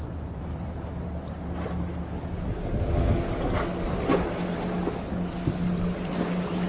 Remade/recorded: recorded